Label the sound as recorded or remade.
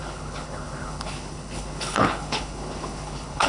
remade